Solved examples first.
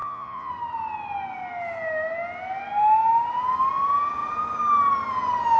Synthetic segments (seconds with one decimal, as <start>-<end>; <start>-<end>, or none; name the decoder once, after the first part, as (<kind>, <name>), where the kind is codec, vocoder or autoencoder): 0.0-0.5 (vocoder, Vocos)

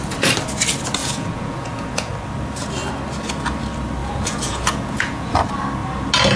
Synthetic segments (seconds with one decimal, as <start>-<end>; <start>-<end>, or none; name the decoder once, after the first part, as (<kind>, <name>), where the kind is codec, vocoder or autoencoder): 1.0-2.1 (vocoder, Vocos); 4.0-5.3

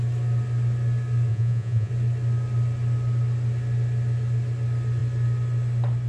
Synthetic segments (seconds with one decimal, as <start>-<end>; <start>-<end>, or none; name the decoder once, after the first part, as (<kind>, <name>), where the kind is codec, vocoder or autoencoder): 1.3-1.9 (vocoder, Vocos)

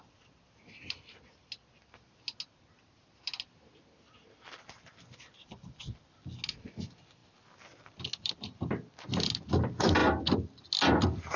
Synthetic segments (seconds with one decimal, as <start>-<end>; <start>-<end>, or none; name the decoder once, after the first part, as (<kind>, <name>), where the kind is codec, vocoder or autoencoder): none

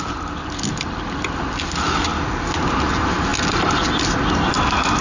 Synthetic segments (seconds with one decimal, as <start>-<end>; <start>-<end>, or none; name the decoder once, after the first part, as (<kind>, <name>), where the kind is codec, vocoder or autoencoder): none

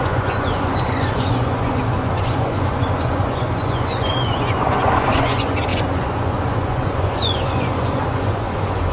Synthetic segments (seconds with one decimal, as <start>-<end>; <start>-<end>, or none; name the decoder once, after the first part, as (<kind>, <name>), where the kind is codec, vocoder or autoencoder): 0.0-8.9 (vocoder, Vocos)

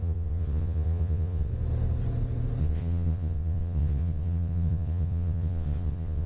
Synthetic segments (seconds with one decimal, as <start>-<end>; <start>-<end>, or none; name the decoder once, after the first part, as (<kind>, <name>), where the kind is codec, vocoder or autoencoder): 0.0-1.5 (vocoder, Vocos); 2.6-6.3

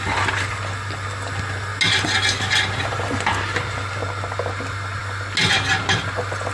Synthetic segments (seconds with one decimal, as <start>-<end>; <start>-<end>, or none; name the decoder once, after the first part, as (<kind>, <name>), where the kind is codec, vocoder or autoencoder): none